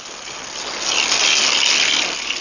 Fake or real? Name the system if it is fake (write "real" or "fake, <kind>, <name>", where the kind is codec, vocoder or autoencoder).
real